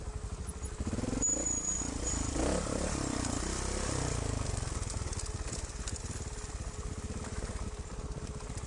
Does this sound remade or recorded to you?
remade